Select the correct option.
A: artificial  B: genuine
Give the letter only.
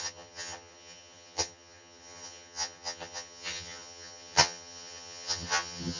A